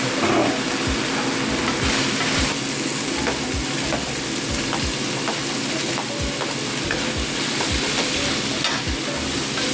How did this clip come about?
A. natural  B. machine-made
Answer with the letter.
A